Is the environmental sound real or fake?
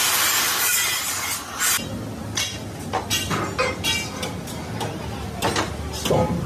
real